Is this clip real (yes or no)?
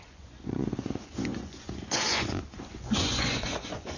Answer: no